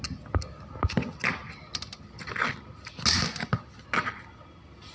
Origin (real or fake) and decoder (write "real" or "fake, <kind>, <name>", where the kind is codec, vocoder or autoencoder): real